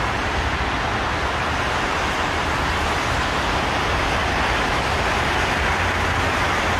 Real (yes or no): yes